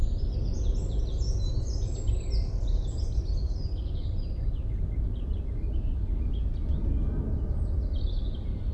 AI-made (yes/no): no